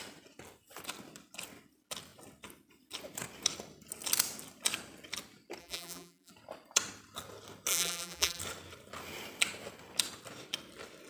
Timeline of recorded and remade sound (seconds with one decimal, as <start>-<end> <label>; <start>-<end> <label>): 0.0-5.6 recorded; 5.6-6.3 remade; 6.3-7.7 recorded; 7.7-8.4 remade; 8.4-11.1 recorded